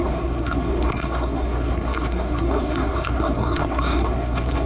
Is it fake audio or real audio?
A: fake